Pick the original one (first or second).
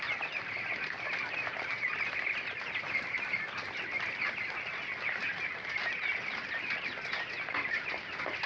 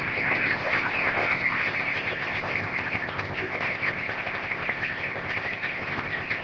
first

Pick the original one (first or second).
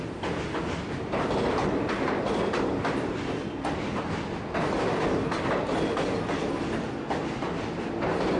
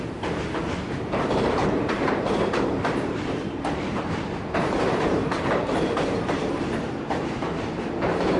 first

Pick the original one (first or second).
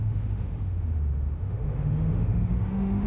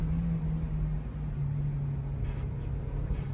second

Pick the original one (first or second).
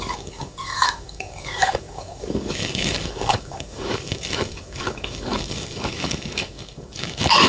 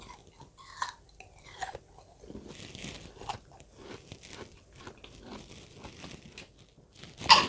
second